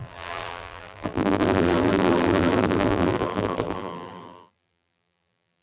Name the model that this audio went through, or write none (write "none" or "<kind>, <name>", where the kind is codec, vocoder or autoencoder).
vocoder, BigVGAN v2